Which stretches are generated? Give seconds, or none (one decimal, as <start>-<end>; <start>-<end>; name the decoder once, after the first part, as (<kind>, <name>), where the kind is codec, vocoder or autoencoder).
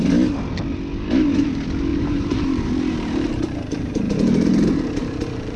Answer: 1.9-5.6 (vocoder, BigVGAN v2)